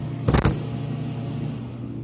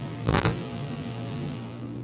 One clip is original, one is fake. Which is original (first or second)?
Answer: first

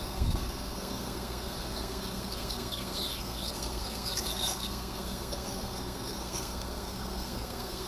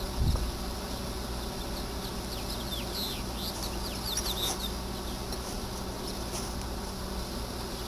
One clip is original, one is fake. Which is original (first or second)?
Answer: second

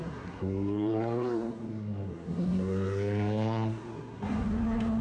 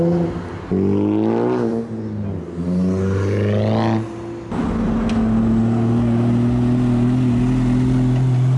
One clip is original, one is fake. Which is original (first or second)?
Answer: second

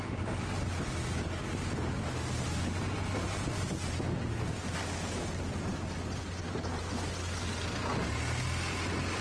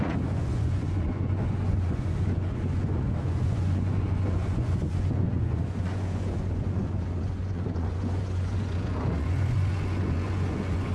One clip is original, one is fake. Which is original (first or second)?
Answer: first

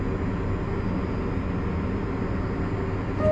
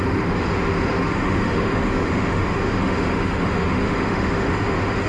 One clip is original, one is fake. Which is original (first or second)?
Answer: first